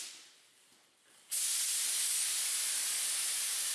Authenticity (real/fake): real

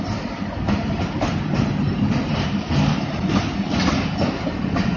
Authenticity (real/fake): real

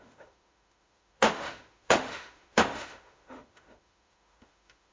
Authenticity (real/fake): fake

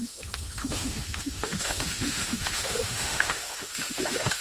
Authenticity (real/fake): fake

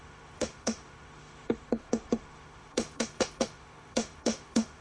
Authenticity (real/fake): fake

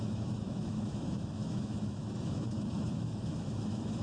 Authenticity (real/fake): fake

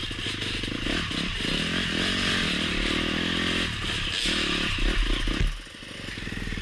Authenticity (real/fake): real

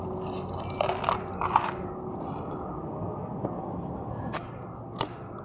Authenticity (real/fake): real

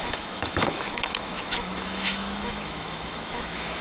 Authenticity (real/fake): fake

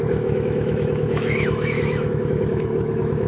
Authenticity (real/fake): fake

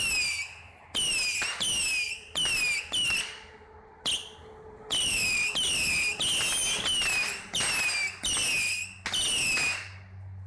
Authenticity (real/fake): real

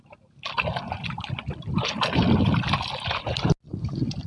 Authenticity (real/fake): real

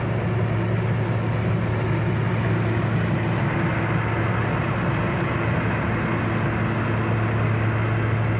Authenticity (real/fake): real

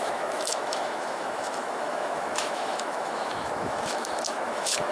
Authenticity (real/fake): fake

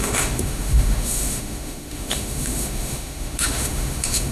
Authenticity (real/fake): fake